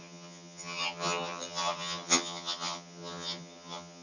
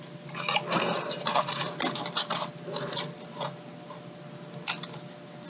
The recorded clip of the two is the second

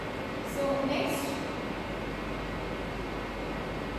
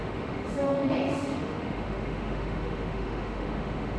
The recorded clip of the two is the first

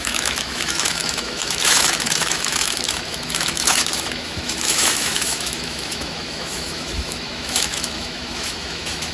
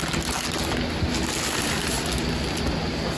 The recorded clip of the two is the second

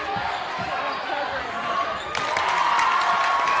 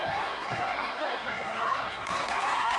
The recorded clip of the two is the first